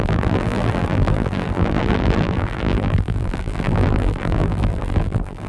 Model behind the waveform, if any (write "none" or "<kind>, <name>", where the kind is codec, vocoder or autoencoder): vocoder, BigVGAN v2